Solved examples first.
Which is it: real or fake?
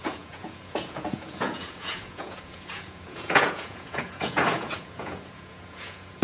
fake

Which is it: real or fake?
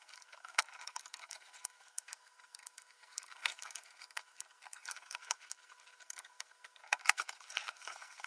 fake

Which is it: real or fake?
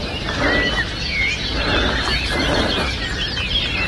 real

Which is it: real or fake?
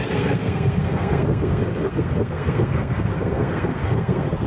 fake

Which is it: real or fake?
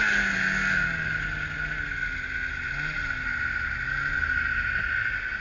real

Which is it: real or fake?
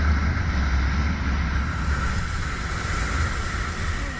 real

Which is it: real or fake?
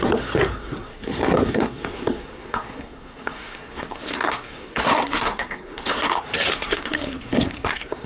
fake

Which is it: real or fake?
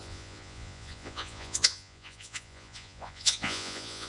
fake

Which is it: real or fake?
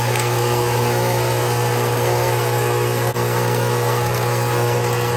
fake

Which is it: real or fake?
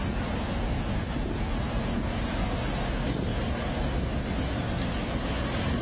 real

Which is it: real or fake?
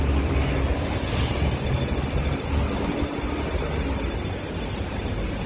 real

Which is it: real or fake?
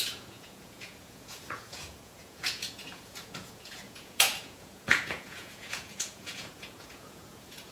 fake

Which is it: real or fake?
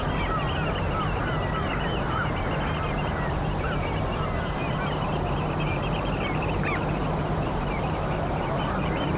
fake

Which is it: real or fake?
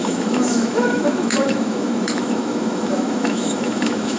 fake